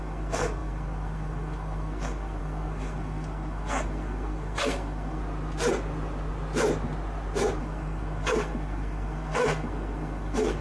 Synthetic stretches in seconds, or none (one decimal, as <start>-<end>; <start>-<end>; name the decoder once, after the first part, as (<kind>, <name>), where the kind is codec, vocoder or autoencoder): 0.0-5.2 (codec, SNAC); 7.6-10.6